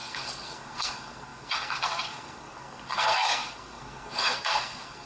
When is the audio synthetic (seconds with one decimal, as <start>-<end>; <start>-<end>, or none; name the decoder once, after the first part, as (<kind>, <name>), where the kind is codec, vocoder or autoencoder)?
0.0-5.1 (codec, SNAC)

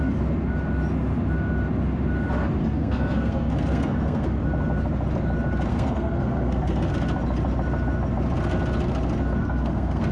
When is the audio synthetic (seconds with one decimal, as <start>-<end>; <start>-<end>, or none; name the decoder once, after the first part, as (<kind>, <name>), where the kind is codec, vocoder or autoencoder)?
2.6-4.4 (codec, SNAC); 5.7-6.9; 9.4-10.1